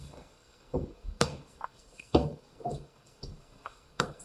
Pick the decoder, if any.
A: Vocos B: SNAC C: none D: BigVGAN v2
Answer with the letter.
B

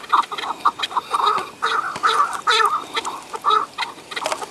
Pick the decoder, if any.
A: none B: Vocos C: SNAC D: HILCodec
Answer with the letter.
A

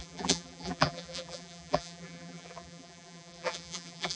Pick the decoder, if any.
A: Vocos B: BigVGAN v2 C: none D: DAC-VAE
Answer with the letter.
B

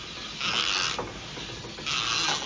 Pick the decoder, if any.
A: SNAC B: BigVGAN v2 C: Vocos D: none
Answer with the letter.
D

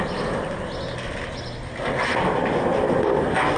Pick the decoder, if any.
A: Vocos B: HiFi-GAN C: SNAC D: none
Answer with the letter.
D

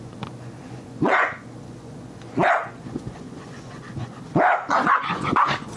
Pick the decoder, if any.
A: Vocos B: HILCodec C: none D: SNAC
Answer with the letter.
A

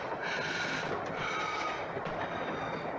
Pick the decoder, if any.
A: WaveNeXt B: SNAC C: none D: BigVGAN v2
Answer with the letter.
C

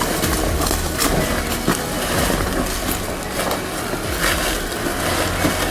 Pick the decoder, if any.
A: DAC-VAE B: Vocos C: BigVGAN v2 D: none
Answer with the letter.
D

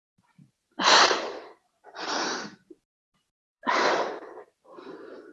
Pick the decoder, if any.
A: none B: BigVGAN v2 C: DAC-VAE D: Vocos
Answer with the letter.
B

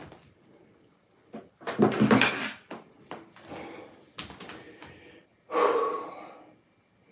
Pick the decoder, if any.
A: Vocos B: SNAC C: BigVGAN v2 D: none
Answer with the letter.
D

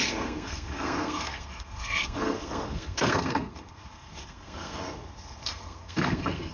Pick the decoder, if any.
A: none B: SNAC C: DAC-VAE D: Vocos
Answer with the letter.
B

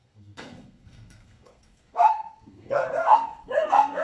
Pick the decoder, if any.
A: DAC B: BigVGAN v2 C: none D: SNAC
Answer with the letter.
D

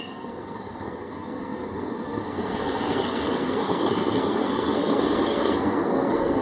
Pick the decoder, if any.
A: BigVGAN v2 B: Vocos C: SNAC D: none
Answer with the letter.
C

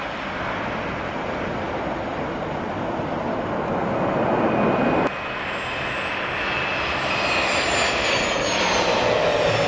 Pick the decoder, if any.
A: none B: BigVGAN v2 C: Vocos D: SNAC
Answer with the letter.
A